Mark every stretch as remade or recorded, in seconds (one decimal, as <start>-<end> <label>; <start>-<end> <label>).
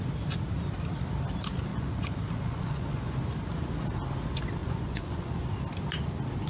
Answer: 0.0-1.7 recorded; 1.7-3.2 remade; 3.2-4.6 recorded; 4.6-5.5 remade; 5.5-6.5 recorded